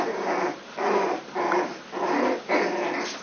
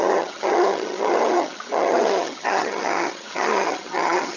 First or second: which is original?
first